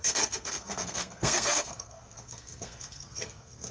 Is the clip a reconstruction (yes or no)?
yes